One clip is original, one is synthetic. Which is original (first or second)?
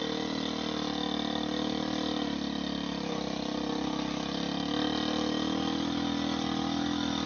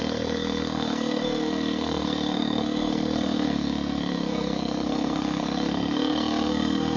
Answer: first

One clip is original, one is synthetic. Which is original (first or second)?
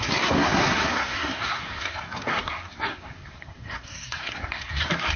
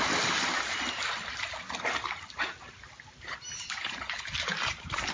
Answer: second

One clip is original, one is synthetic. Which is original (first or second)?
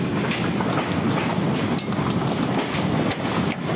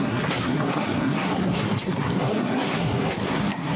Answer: first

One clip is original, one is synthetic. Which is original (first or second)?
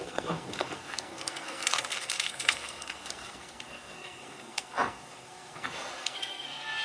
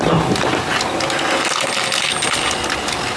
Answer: second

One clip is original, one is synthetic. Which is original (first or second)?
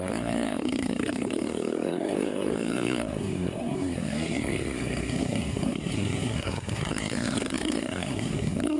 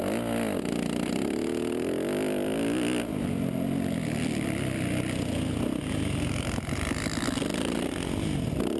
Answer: second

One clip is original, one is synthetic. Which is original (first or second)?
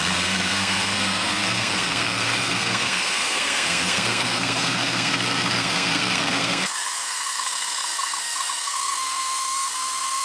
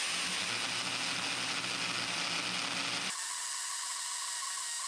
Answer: second